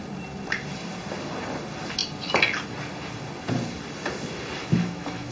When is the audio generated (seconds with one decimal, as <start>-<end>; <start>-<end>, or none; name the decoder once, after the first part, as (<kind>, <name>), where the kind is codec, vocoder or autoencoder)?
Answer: 4.6-5.3 (autoencoder, DAC-VAE)